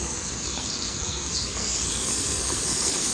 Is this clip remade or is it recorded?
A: remade